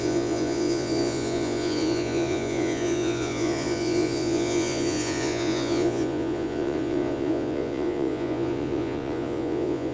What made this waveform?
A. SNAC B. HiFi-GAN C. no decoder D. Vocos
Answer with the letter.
D